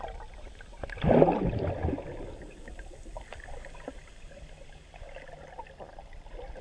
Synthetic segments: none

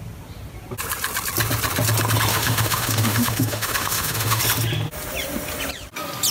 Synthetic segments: 2.3-4.4

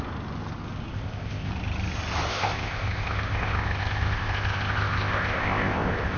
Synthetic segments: 0.9-1.5; 2.3-6.2

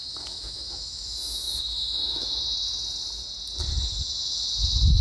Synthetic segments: 0.0-2.4; 3.9-5.0

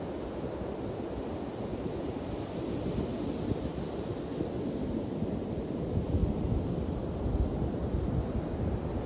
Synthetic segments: 1.7-2.3; 6.2-7.0

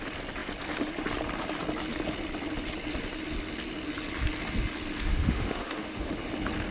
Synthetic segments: 5.1-6.1